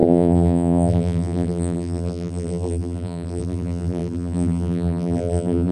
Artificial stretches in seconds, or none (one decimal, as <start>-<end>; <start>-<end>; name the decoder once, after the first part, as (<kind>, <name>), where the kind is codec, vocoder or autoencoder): 0.0-5.7 (vocoder, BigVGAN v2)